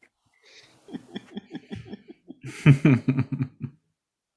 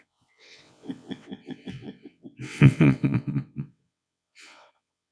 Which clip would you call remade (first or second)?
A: second